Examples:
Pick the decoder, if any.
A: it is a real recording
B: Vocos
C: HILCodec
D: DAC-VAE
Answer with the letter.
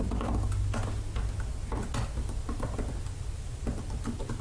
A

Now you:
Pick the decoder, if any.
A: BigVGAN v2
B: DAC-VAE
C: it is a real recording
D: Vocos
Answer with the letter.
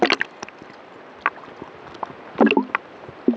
C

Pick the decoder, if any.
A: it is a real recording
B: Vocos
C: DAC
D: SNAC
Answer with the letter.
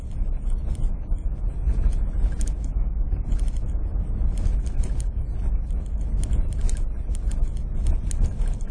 A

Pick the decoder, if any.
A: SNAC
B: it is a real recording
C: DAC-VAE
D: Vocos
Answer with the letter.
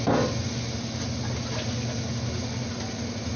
B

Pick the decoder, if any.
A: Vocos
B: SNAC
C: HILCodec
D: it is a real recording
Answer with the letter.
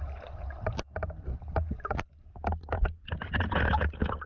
D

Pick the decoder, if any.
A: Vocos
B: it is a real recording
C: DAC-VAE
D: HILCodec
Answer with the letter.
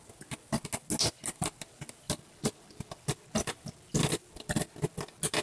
B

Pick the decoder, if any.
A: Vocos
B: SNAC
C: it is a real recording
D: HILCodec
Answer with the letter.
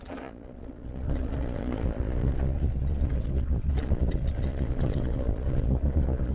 A